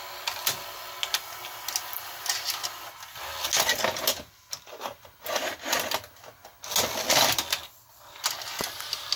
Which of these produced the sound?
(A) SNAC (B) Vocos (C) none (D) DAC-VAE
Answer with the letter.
C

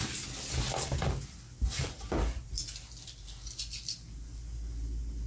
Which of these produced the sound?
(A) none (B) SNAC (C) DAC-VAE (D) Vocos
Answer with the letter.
A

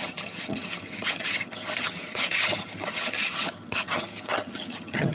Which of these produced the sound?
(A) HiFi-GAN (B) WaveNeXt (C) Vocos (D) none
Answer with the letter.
A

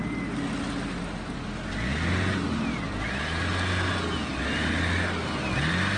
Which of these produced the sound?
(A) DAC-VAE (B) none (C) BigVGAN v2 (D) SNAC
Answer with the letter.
B